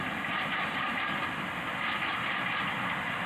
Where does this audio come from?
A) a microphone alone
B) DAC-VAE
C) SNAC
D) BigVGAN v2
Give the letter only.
A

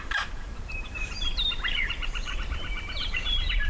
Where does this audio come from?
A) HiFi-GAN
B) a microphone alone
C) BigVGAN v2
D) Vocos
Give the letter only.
C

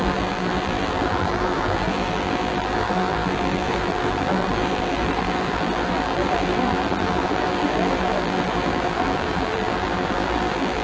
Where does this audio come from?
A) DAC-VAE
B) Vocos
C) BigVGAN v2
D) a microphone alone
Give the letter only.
C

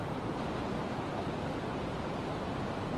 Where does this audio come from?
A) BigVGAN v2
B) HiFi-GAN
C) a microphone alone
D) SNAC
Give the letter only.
C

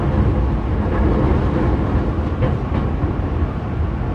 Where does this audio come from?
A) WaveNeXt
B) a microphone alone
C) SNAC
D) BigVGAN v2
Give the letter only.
B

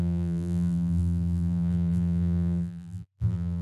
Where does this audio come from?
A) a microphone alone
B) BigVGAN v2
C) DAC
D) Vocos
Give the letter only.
B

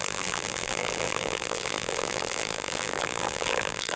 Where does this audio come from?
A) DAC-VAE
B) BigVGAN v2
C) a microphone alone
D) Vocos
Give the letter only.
B